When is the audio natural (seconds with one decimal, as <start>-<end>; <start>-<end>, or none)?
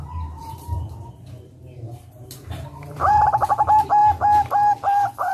0.0-0.4; 3.6-5.3